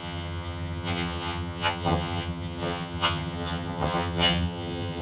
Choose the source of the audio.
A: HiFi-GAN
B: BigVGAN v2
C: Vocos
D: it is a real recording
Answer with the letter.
A